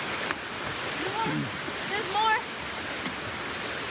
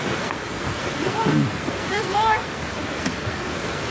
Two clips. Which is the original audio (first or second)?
first